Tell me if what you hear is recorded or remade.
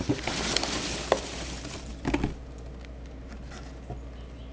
recorded